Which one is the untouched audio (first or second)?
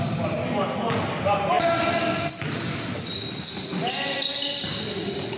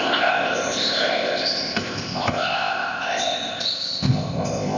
first